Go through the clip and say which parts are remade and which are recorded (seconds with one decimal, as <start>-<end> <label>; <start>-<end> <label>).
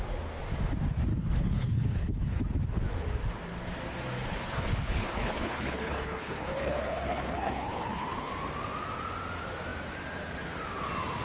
0.0-1.1 recorded; 1.1-2.4 remade; 2.4-4.3 recorded; 4.3-8.3 remade; 8.3-11.2 recorded